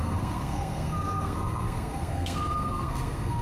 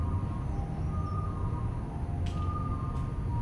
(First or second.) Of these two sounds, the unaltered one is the second